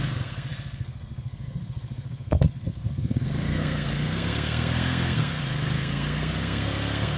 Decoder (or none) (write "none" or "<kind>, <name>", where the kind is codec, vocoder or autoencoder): codec, SNAC